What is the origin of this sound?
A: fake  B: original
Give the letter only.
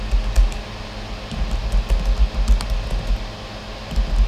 B